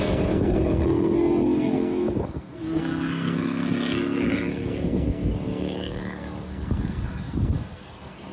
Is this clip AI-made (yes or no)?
yes